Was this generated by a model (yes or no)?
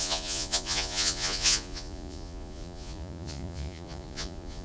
yes